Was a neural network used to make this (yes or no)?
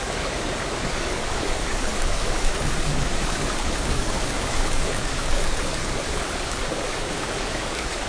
yes